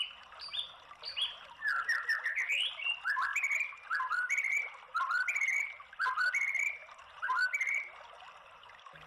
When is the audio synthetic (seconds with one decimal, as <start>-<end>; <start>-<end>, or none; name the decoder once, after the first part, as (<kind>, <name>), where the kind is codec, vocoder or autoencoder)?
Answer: 3.3-6.3 (vocoder, BigVGAN v2)